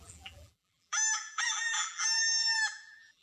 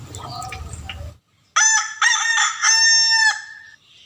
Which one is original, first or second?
second